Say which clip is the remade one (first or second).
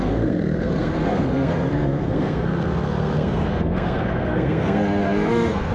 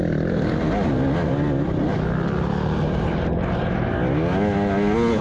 first